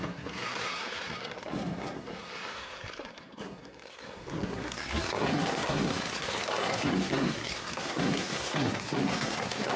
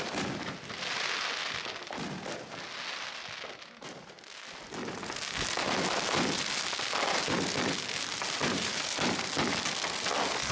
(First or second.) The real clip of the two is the second